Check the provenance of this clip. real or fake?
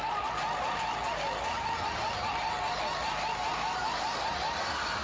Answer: real